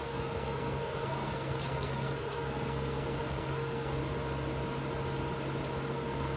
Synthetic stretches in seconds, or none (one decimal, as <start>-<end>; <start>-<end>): 0.0-4.0; 5.9-6.4